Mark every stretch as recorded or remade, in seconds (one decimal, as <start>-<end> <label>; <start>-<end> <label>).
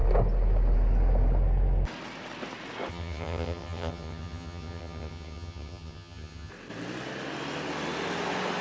0.0-2.9 recorded; 2.9-6.5 remade; 6.5-8.6 recorded